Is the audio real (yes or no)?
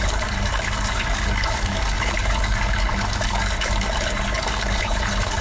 no